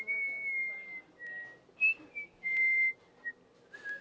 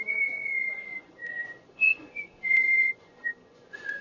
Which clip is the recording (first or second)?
first